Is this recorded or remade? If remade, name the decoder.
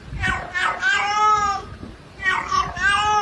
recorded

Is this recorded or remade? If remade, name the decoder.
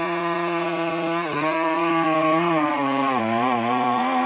remade, vocoder, Vocos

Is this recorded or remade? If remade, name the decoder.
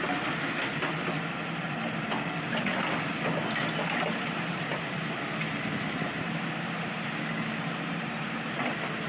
recorded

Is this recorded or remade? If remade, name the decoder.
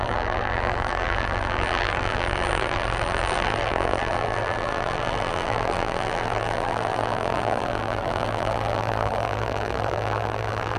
remade, vocoder, BigVGAN v2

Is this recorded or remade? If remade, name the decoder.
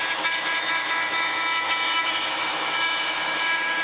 remade, autoencoder, DAC-VAE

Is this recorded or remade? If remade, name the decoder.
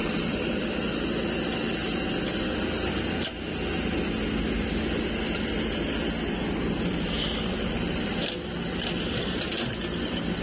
recorded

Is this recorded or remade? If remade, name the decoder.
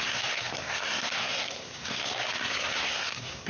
remade, codec, SNAC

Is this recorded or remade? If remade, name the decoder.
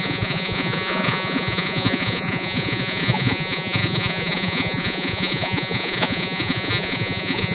remade, vocoder, Vocos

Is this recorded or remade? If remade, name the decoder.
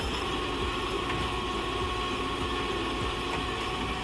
recorded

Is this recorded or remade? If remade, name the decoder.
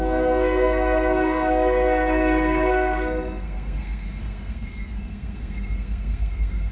remade, codec, SNAC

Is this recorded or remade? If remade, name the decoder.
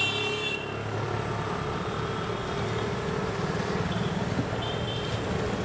recorded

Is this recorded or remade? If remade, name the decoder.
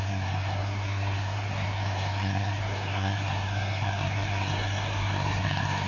remade, codec, SNAC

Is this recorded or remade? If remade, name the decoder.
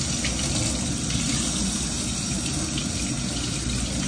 recorded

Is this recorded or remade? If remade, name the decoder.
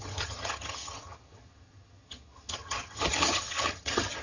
remade, vocoder, HiFi-GAN